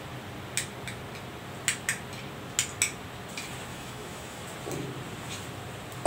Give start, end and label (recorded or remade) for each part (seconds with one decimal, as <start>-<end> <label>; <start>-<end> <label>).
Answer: 0.0-3.7 recorded; 3.7-4.4 remade; 4.4-6.1 recorded